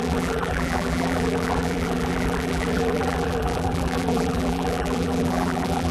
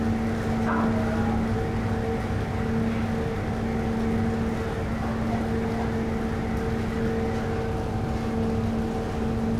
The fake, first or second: first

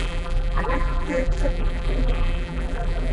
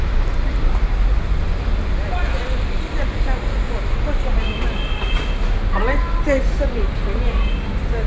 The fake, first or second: first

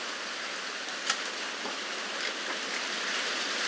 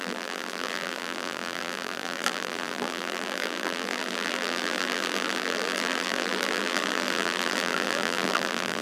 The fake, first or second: second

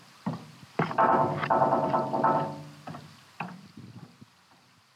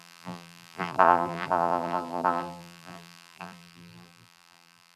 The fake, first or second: second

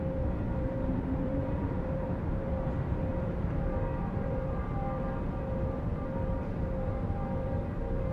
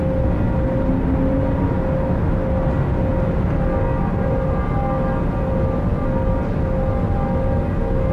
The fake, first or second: first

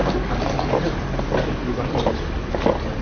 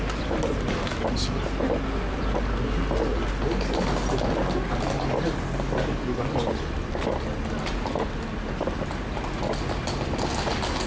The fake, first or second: first